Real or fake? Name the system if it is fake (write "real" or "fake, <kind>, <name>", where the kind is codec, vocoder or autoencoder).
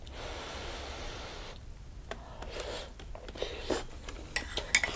real